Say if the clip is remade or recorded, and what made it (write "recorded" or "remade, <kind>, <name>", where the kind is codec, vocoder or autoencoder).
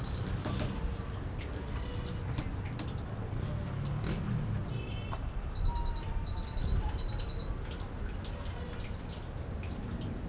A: recorded